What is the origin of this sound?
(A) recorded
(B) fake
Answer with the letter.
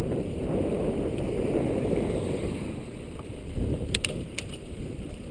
B